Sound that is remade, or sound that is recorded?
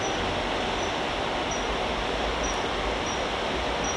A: recorded